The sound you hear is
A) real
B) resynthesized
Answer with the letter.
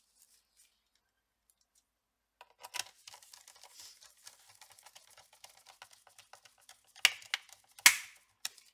A